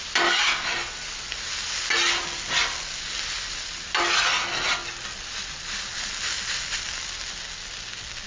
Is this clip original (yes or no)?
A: yes